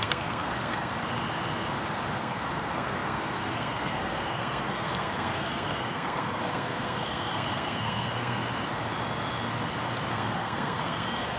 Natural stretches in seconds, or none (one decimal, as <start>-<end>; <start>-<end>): 0.9-2.2; 8.4-10.1